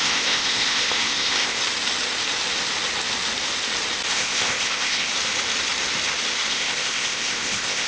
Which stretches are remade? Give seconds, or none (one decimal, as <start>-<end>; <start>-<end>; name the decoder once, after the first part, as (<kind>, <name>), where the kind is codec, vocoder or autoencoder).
0.0-1.6 (codec, ZipCodec); 4.1-5.1; 6.5-7.9